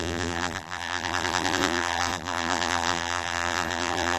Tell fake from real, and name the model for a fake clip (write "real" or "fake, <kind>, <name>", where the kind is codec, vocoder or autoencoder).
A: fake, vocoder, BigVGAN v2